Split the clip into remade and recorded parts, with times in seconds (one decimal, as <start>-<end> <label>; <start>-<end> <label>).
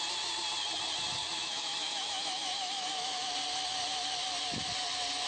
0.0-1.2 recorded; 1.2-3.3 remade; 3.3-5.3 recorded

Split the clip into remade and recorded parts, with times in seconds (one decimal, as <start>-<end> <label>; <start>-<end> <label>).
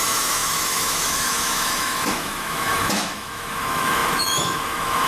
0.0-5.1 remade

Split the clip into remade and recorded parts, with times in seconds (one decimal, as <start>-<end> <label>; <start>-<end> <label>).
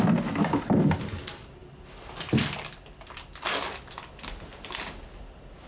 0.0-5.7 recorded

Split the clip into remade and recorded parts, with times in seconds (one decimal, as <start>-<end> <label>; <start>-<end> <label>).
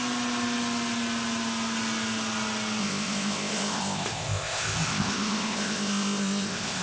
0.0-2.8 recorded; 2.8-6.8 remade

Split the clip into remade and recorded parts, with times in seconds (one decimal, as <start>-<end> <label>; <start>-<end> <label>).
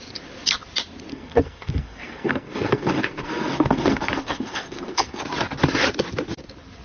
0.0-1.1 recorded; 1.1-5.2 remade; 5.2-6.8 recorded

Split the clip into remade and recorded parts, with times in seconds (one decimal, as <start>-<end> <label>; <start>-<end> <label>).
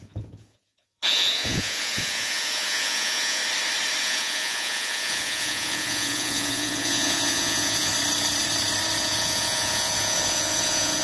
0.0-3.4 remade; 3.4-4.0 recorded; 4.0-7.9 remade; 7.9-9.0 recorded; 9.0-11.0 remade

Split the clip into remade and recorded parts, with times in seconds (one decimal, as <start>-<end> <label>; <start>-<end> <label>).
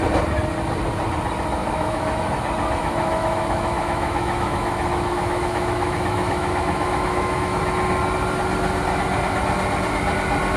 0.0-1.6 recorded; 1.6-2.2 remade; 2.2-2.8 recorded; 2.8-7.6 remade; 7.6-10.6 recorded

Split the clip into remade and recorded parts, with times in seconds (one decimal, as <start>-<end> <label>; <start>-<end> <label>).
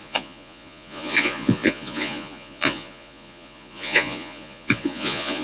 0.0-5.4 remade